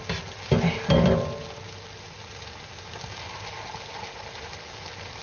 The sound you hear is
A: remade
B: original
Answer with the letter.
B